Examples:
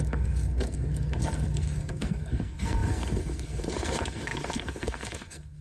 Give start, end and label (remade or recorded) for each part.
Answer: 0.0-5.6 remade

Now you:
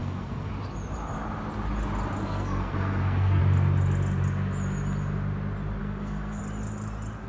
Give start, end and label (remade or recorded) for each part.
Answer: 0.0-0.5 remade; 0.5-2.2 recorded; 2.2-3.4 remade; 3.4-5.8 recorded; 5.8-6.4 remade; 6.4-7.3 recorded

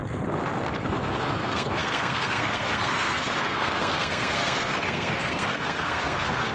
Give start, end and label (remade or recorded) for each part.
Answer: 0.0-0.7 recorded; 0.7-6.5 remade

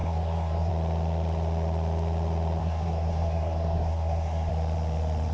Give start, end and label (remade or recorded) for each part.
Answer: 0.0-0.7 remade; 0.7-2.6 recorded; 2.6-4.5 remade; 4.5-5.3 recorded

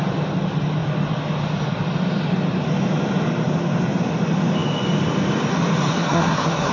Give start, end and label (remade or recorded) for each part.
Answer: 0.0-5.9 recorded; 5.9-6.7 remade

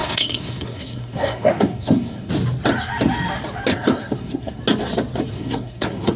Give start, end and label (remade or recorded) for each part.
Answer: 0.0-2.3 remade; 2.3-3.7 recorded; 3.7-4.6 remade; 4.6-5.3 recorded; 5.3-6.2 remade